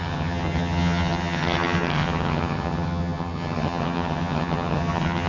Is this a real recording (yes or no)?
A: no